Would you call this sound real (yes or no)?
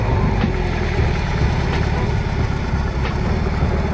yes